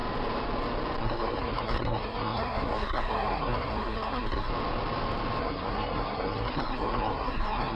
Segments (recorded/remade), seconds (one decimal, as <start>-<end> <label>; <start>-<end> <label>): 0.0-1.0 recorded; 1.0-4.5 remade; 4.5-5.4 recorded; 5.4-7.8 remade